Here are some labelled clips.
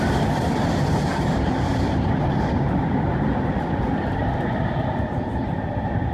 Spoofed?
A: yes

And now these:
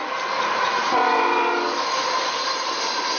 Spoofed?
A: yes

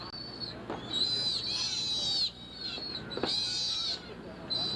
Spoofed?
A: no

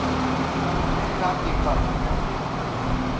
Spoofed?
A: no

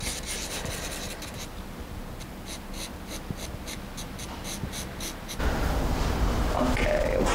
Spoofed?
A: no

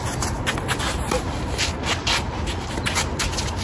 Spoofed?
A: no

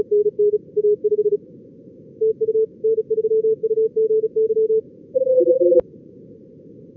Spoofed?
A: yes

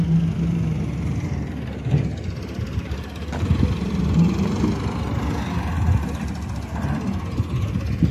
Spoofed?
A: no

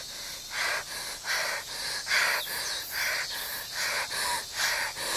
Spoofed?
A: no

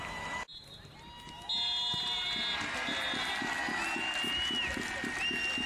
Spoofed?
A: no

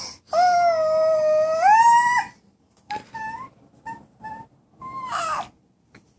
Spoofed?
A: no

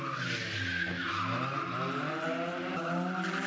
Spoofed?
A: no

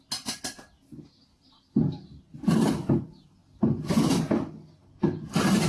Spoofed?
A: no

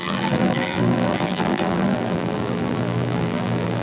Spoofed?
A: yes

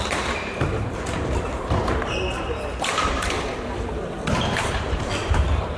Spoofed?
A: yes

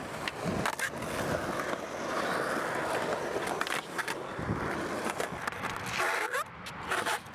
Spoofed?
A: no